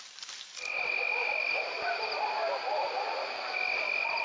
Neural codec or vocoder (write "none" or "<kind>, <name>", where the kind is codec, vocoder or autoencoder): none